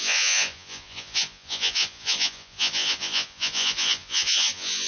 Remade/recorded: remade